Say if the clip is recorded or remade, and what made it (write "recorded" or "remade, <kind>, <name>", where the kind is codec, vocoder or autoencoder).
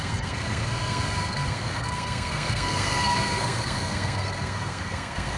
remade, codec, SNAC